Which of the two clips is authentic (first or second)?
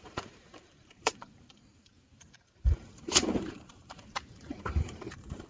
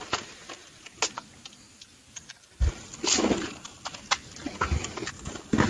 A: second